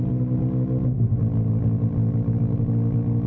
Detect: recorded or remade recorded